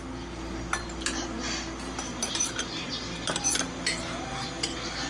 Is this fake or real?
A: real